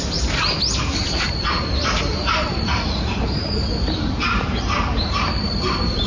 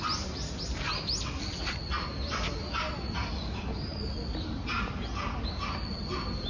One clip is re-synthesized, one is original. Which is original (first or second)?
second